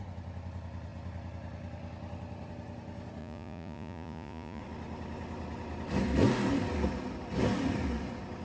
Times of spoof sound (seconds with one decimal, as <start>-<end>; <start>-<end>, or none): 3.2-4.6